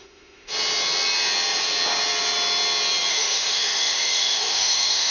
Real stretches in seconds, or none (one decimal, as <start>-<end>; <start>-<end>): 0.5-3.1